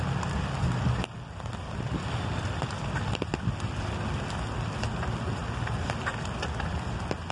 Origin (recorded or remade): recorded